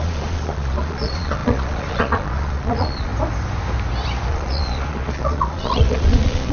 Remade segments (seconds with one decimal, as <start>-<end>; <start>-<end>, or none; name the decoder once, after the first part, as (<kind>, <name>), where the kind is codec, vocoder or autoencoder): 0.0-3.1 (vocoder, Vocos); 4.3-6.5